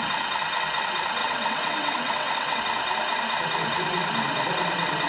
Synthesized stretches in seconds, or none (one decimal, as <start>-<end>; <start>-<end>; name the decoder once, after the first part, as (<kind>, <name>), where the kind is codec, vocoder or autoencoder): 1.2-2.6 (vocoder, WaveNeXt)